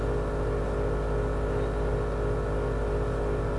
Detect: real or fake real